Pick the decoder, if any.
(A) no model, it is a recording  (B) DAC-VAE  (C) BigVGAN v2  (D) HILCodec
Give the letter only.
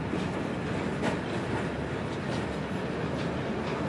A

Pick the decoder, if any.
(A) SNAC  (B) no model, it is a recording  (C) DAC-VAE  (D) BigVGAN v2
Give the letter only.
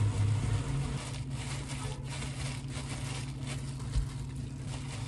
B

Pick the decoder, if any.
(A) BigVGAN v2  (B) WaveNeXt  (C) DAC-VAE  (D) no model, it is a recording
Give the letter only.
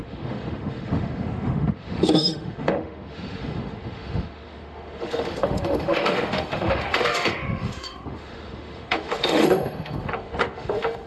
C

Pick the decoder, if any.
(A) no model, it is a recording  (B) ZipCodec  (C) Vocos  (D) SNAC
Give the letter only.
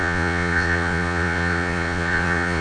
C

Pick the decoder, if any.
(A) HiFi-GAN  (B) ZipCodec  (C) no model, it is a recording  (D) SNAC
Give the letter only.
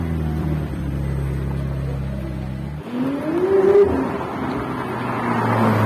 C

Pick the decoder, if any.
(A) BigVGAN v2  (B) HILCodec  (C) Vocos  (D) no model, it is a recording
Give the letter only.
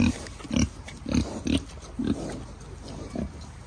D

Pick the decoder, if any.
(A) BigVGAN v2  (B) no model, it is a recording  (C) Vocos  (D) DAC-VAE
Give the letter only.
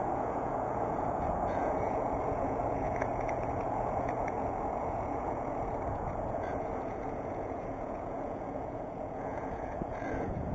C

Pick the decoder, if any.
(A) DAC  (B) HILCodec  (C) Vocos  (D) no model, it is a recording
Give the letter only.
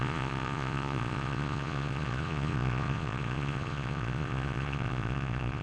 C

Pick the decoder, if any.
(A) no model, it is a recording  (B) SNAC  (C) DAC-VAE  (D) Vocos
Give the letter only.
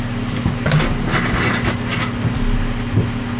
A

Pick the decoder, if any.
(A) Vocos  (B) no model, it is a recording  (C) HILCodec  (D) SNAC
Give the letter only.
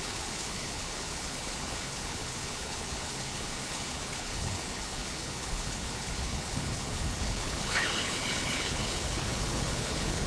C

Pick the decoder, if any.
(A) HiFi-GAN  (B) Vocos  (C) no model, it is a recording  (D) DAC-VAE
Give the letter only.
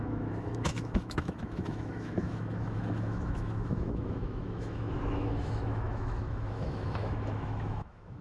D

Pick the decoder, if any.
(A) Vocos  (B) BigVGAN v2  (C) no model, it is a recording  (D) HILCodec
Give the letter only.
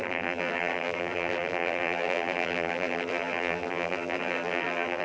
B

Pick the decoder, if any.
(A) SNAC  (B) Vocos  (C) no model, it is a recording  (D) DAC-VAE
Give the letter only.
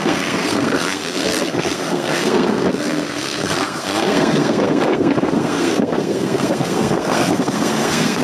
A